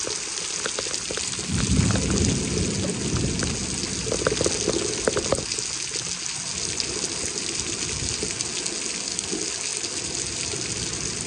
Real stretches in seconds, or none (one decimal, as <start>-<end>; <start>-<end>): 0.0-11.3